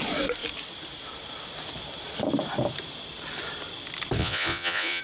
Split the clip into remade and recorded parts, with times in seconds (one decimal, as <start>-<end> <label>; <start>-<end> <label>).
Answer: 0.0-4.2 recorded; 4.2-5.0 remade